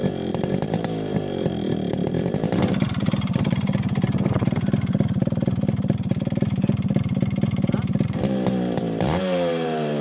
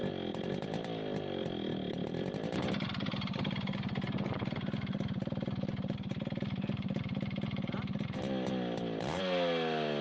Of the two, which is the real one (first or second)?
second